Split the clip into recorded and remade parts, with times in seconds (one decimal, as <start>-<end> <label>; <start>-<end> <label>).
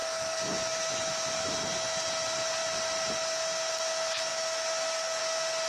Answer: 0.0-1.5 remade; 1.5-4.3 recorded; 4.3-5.2 remade; 5.2-5.7 recorded